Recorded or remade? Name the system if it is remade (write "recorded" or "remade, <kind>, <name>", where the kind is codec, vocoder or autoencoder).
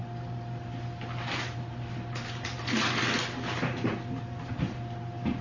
recorded